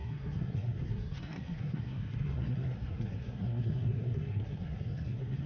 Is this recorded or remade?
remade